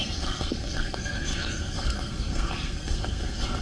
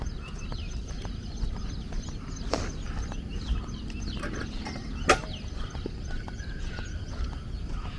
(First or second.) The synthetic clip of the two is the first